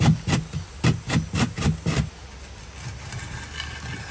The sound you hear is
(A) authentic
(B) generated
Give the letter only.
A